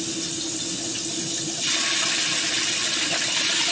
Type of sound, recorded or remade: recorded